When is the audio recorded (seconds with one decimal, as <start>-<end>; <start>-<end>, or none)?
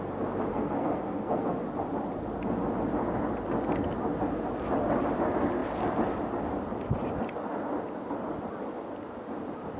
0.0-0.5; 1.6-9.8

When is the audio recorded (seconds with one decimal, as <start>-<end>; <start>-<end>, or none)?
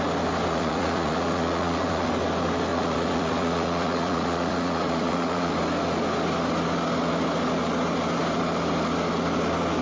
0.0-0.5; 2.1-2.7; 5.5-9.8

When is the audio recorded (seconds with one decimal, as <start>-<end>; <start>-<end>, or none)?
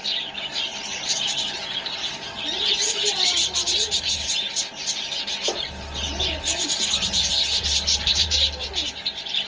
none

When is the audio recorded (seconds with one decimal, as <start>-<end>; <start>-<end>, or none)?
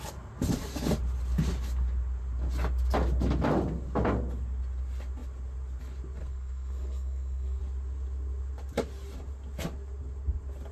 0.0-6.2; 7.6-10.7